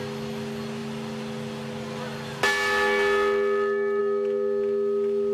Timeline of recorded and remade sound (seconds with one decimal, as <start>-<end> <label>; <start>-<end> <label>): 0.0-5.3 recorded